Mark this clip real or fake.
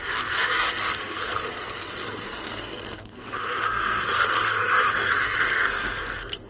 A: fake